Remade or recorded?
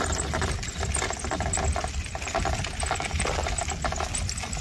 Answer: recorded